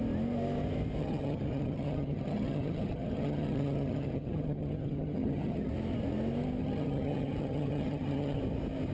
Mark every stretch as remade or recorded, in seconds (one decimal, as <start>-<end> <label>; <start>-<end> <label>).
0.0-1.0 recorded; 1.0-5.7 remade; 5.7-6.6 recorded; 6.6-8.4 remade; 8.4-8.9 recorded